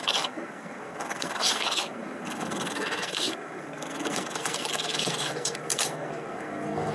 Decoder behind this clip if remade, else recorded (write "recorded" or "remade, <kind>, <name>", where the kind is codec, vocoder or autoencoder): remade, codec, SNAC